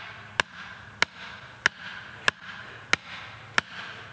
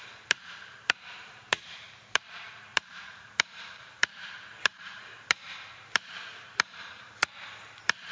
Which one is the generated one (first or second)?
second